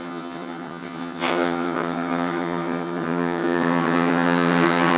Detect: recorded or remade remade